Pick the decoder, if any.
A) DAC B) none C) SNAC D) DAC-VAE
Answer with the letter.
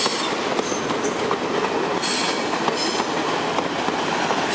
B